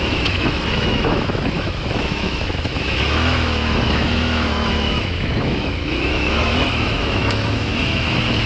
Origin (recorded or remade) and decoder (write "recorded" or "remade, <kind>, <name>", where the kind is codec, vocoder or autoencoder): remade, autoencoder, DAC-VAE